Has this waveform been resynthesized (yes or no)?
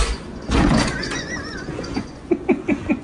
yes